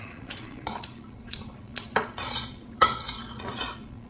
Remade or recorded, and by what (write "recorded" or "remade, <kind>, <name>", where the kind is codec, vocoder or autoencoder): remade, vocoder, Vocos